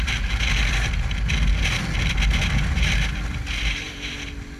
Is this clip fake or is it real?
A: real